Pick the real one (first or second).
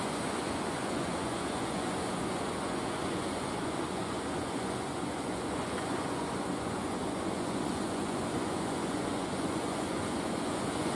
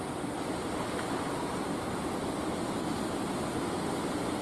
second